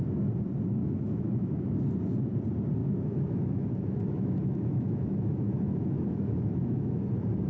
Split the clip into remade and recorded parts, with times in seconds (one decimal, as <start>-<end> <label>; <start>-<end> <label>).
0.0-0.8 recorded; 0.8-1.6 remade; 1.6-2.8 recorded; 2.8-7.0 remade; 7.0-7.5 recorded